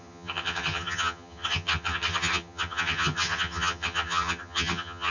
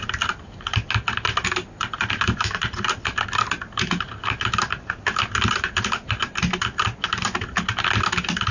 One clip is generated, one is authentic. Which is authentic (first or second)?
second